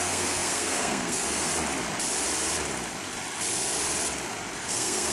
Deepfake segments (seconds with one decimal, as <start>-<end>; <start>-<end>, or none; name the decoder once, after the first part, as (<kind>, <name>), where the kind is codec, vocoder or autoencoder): 0.0-1.5 (codec, SNAC); 4.6-5.1